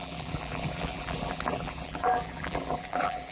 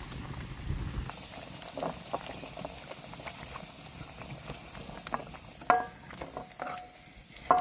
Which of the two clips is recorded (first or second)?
second